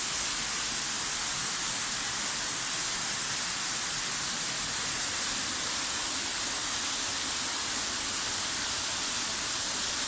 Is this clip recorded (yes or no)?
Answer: yes